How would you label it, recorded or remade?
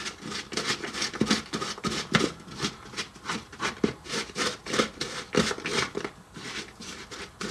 recorded